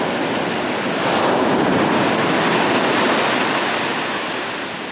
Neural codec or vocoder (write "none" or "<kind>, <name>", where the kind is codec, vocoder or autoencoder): none